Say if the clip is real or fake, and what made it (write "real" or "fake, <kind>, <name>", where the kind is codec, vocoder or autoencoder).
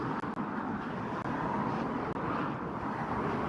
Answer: real